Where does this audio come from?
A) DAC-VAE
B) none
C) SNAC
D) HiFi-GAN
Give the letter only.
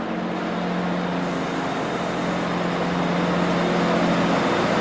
B